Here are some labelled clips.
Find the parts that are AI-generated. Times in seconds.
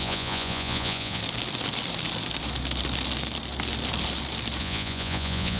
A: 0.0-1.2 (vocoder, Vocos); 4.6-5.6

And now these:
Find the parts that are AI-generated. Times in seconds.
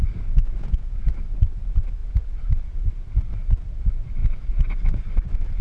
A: 0.4-1.0 (vocoder, Vocos)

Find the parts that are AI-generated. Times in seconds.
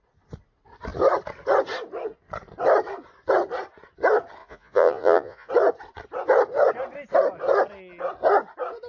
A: 4.4-5.5 (vocoder, Vocos)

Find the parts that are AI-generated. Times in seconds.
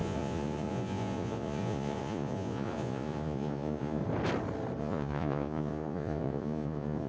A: 0.0-4.0 (vocoder, Vocos); 4.8-7.1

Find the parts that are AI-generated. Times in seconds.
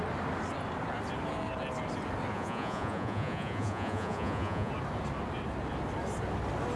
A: 2.3-4.7 (vocoder, Vocos)